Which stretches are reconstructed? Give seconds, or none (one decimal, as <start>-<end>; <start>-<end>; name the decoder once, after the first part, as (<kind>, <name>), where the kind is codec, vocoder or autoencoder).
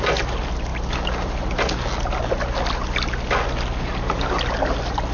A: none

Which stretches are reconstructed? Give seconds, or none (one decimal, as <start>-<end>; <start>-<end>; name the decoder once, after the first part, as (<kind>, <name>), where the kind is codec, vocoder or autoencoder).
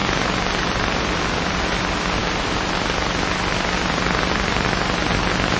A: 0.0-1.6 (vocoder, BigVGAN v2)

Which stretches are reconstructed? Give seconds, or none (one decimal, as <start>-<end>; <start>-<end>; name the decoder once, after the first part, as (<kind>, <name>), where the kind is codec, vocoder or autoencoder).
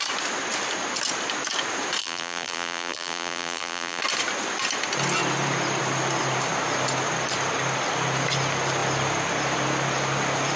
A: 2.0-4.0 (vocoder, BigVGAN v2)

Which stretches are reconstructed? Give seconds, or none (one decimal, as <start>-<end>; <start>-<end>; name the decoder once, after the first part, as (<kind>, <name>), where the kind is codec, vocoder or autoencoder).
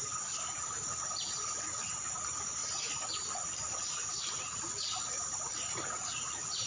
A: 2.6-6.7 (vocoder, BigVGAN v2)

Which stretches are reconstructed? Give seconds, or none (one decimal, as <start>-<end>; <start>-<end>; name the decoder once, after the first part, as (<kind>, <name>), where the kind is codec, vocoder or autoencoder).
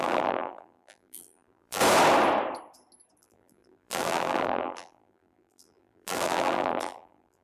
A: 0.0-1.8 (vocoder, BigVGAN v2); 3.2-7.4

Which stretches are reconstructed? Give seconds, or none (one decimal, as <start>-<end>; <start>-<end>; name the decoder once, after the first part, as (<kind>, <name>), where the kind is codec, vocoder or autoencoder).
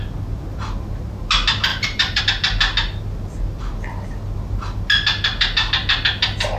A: 1.7-2.2 (vocoder, BigVGAN v2)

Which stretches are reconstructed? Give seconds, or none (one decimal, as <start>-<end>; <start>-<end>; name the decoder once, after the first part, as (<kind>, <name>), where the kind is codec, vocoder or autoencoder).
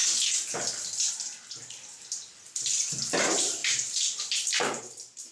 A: 3.2-5.3 (vocoder, BigVGAN v2)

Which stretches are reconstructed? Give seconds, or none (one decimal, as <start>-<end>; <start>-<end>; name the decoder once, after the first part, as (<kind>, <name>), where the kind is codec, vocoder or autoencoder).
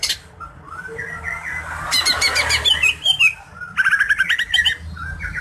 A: 0.0-1.5 (vocoder, BigVGAN v2)